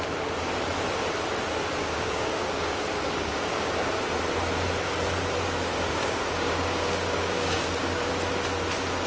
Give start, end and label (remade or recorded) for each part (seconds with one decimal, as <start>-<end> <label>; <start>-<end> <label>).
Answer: 0.0-1.8 recorded; 1.8-3.9 remade; 3.9-5.9 recorded; 5.9-8.1 remade; 8.1-9.1 recorded